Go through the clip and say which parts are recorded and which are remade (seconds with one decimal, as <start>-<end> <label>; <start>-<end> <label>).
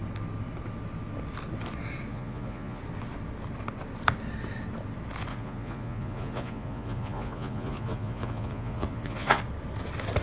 0.0-2.1 recorded; 2.1-2.8 remade; 2.8-5.3 recorded; 5.3-9.4 remade; 9.4-10.2 recorded